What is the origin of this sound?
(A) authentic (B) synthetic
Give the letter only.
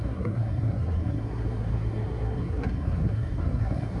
B